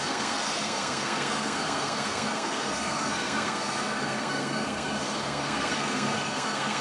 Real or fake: fake